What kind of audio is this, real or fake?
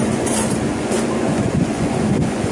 fake